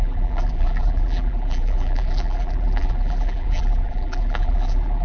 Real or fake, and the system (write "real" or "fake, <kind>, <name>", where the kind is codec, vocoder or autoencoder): fake, vocoder, BigVGAN v2